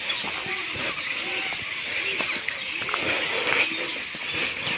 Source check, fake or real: real